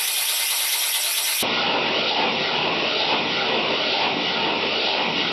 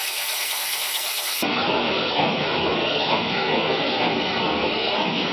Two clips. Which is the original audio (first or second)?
first